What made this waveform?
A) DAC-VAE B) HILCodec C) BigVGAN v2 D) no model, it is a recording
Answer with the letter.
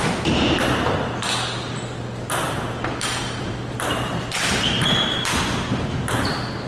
D